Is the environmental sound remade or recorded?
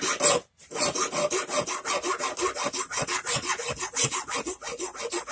recorded